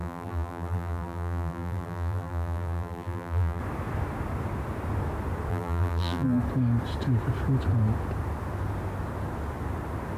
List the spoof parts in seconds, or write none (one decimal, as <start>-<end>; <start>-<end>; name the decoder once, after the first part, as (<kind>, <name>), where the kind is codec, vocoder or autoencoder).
0.0-3.6 (vocoder, BigVGAN v2); 5.5-6.4